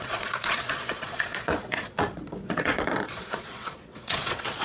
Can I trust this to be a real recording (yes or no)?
no